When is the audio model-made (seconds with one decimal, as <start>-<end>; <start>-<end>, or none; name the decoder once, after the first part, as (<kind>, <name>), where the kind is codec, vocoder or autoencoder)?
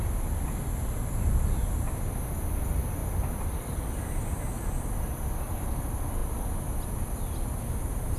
3.0-4.0 (vocoder, BigVGAN v2)